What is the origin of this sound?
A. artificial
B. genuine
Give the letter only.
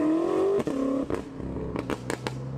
B